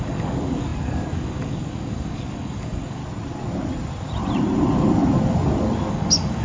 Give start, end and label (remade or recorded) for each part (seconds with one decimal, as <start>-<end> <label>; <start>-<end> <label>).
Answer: 0.0-3.0 remade; 3.0-5.9 recorded; 5.9-6.4 remade